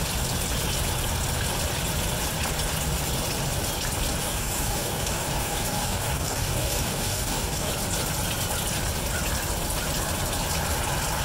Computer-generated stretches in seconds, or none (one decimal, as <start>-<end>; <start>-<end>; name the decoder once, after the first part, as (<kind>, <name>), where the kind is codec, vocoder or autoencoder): 4.2-7.7 (codec, DAC)